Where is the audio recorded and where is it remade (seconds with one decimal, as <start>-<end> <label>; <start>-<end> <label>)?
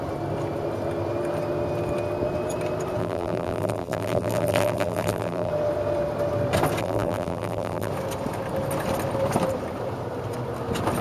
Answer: 0.0-3.0 recorded; 3.0-5.5 remade; 5.5-6.8 recorded; 6.8-7.9 remade; 7.9-11.0 recorded